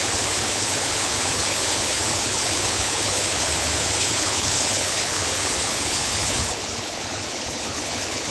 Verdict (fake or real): fake